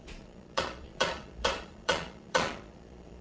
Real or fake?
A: fake